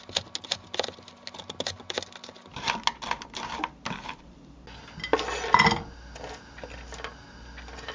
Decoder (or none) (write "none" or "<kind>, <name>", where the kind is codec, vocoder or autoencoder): none